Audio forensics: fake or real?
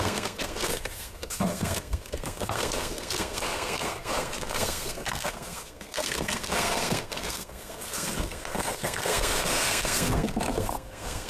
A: fake